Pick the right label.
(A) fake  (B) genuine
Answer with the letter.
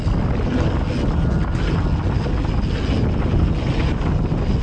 B